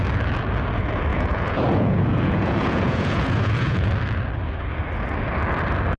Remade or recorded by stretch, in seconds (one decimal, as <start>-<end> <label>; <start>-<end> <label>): 0.0-1.1 recorded; 1.1-3.9 remade; 3.9-6.0 recorded